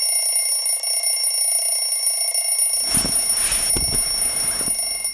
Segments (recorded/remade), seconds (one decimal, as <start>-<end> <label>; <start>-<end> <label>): 0.0-5.1 recorded